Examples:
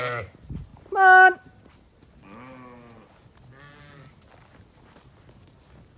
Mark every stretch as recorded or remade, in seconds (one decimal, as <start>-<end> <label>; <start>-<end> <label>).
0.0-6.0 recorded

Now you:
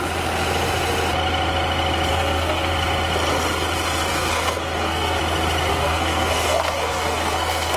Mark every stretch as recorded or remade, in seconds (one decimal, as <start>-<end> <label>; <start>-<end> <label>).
0.0-2.1 recorded; 2.1-2.7 remade; 2.7-4.1 recorded; 4.1-5.2 remade; 5.2-5.7 recorded; 5.7-7.8 remade

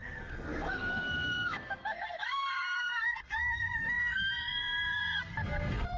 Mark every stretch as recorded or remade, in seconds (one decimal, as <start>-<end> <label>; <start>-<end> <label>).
0.0-6.0 remade